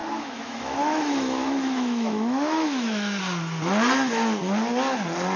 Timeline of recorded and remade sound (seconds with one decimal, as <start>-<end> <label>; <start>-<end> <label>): 0.0-3.2 remade; 3.2-5.4 recorded